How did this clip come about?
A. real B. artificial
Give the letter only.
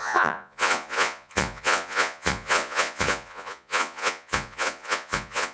B